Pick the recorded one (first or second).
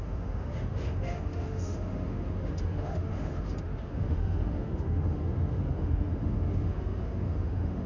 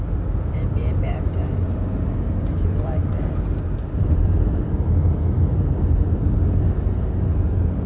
second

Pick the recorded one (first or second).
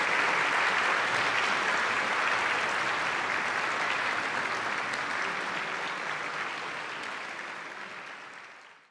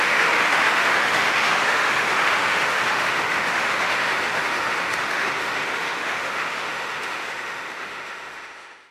first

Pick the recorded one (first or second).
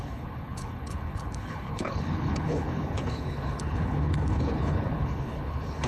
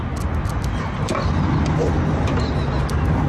second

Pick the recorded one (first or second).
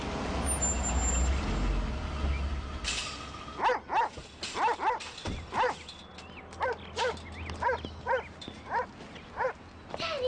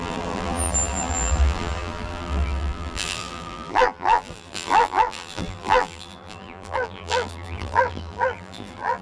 first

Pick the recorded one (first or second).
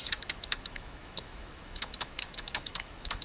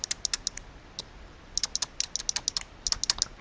second